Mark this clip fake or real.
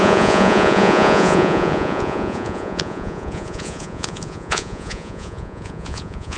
fake